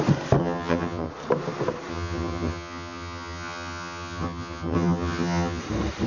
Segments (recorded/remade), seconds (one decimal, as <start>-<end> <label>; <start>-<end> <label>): 0.0-0.4 recorded; 0.4-1.1 remade; 1.1-1.9 recorded; 1.9-5.6 remade; 5.6-6.1 recorded